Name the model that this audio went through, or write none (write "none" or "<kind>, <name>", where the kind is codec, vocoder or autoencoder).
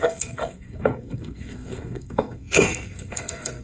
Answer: codec, SNAC